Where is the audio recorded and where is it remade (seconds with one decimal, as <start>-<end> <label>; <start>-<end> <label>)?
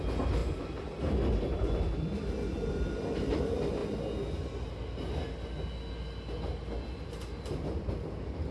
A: 0.0-8.5 recorded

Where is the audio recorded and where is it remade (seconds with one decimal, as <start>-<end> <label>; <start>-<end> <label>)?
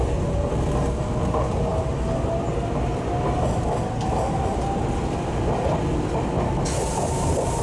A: 0.0-7.6 recorded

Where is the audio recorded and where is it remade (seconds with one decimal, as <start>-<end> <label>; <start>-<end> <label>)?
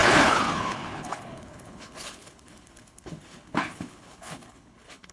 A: 0.0-5.1 remade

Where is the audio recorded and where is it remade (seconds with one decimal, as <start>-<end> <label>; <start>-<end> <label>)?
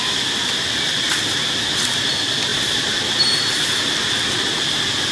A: 0.0-5.1 recorded